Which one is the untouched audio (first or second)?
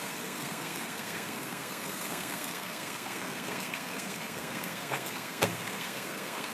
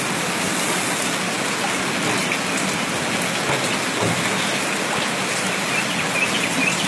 second